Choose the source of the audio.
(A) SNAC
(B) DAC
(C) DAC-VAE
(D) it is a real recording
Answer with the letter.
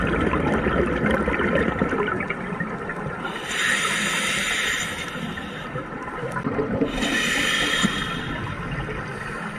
D